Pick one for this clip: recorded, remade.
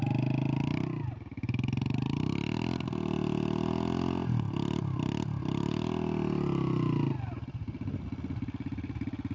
recorded